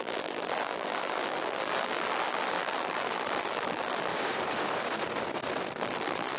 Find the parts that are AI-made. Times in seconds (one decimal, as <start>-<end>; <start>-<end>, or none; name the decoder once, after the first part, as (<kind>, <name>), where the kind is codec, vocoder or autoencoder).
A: 0.0-4.1 (vocoder, BigVGAN v2); 5.8-6.4